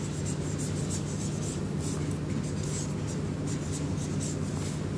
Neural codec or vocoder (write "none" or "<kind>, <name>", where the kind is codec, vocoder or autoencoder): none